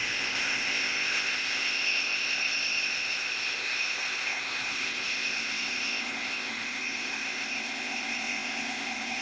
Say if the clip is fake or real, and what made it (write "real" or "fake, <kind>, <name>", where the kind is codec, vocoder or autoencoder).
fake, codec, ZipCodec